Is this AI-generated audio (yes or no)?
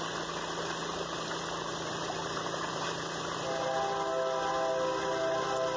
no